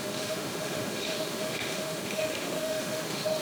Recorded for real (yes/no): no